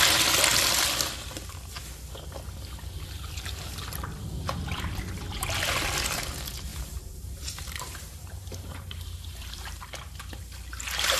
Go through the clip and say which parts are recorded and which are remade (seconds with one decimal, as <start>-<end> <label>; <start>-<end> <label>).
0.0-6.7 recorded; 6.7-9.8 remade; 9.8-11.2 recorded